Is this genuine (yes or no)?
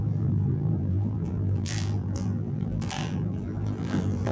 no